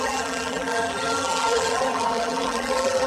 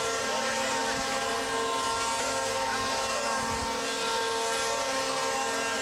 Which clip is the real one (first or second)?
second